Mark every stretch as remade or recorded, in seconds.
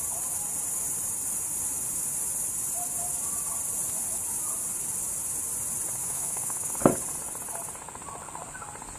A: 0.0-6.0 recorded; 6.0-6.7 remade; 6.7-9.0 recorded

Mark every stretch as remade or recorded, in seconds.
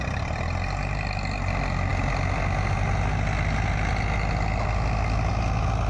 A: 0.0-5.9 recorded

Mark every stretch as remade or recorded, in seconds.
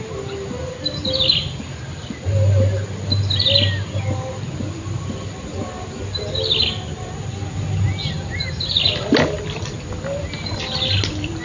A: 0.0-11.4 recorded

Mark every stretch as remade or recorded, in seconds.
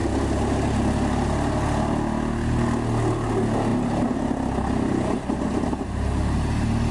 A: 0.0-6.9 recorded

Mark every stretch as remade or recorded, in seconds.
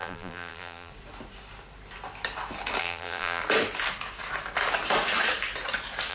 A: 0.0-0.9 remade; 0.9-2.8 recorded; 2.8-3.4 remade; 3.4-6.1 recorded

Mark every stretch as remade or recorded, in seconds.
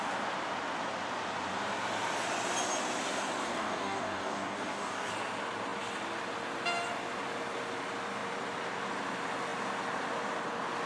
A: 0.0-3.4 recorded; 3.4-5.1 remade; 5.1-10.9 recorded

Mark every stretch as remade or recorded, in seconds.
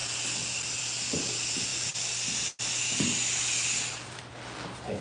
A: 0.0-5.0 recorded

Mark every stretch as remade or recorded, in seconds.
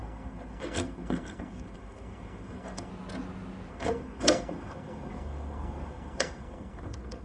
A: 0.0-2.9 remade; 2.9-3.7 recorded; 3.7-7.2 remade